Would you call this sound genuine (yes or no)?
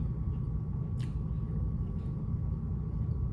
yes